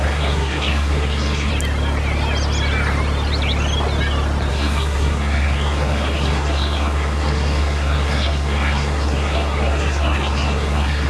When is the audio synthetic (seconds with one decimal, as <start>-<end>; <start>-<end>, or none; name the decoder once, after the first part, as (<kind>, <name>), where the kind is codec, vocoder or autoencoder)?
0.0-1.5 (codec, SNAC); 4.5-11.1